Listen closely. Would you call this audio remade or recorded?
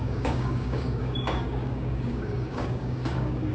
remade